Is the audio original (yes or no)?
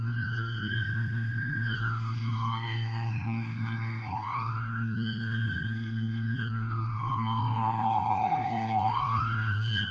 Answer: no